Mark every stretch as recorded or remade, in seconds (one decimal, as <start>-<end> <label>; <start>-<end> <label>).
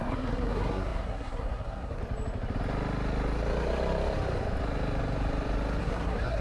0.0-2.0 remade; 2.0-5.8 recorded; 5.8-6.4 remade